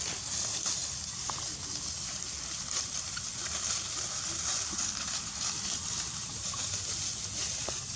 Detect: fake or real real